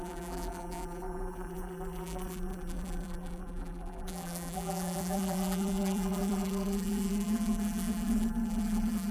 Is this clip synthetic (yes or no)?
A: yes